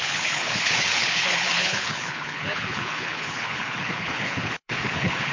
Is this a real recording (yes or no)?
no